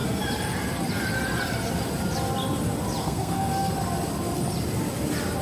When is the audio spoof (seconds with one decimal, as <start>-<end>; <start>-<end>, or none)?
3.0-3.7